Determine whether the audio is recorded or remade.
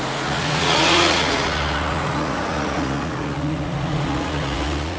remade